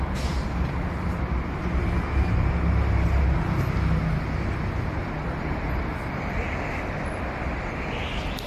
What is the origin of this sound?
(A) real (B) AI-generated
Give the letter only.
A